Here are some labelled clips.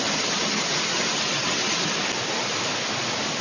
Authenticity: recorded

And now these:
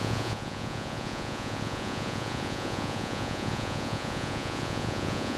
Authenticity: remade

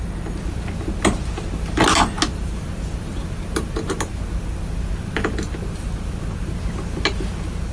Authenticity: recorded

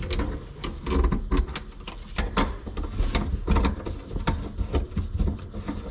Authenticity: recorded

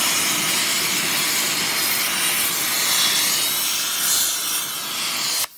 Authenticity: recorded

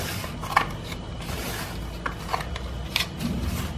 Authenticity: recorded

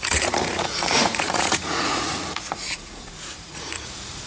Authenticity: remade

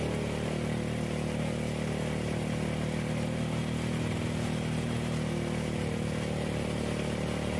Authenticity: recorded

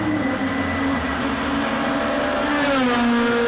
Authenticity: recorded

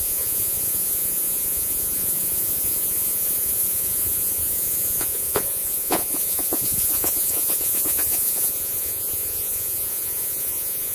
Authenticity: remade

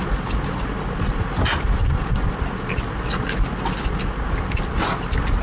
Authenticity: recorded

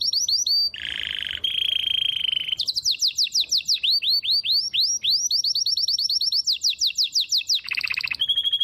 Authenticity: recorded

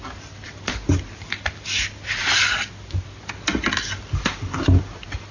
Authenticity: recorded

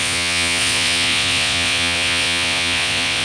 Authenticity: remade